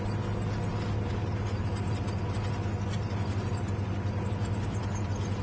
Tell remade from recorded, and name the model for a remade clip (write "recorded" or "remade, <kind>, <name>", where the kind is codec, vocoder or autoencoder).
recorded